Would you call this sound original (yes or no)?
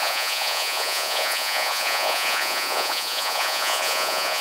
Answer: no